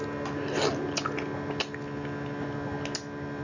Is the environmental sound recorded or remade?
recorded